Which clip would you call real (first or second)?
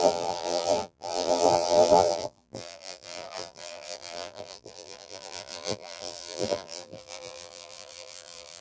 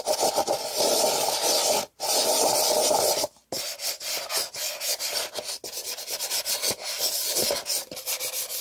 second